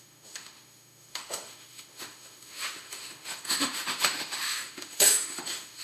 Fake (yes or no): yes